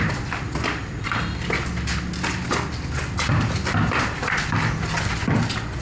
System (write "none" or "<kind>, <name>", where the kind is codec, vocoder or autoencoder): none